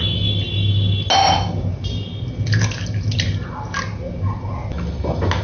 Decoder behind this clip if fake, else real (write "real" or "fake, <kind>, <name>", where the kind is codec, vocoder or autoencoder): real